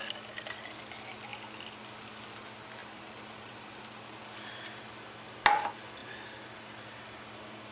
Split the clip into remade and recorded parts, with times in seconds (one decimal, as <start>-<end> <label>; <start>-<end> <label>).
0.0-2.8 recorded; 2.8-3.8 remade; 3.8-7.7 recorded